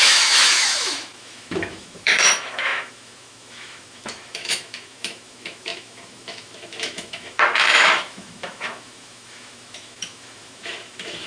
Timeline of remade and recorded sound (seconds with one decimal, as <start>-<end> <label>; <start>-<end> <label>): 0.0-11.3 remade